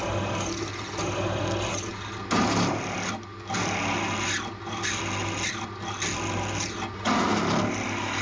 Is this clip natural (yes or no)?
yes